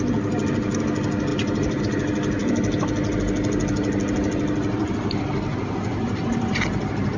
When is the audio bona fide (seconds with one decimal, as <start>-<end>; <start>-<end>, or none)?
0.0-1.3; 1.8-5.9